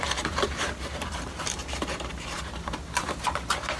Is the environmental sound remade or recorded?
remade